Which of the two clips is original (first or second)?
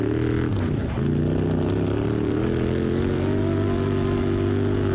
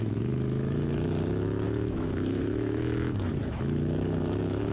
first